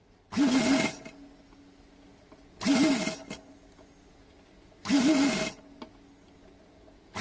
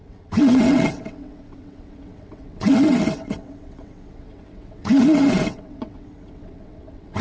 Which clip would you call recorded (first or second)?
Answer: first